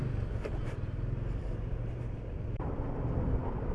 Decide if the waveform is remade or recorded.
recorded